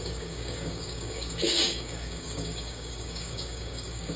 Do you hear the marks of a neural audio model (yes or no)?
yes